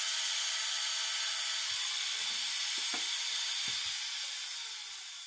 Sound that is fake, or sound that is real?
real